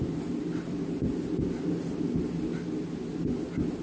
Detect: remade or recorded recorded